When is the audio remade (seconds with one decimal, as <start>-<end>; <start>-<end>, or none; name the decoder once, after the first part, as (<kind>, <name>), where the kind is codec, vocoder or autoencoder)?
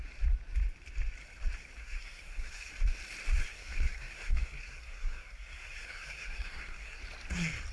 1.8-2.7 (codec, SNAC); 3.4-7.0